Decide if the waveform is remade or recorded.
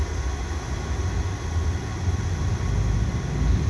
recorded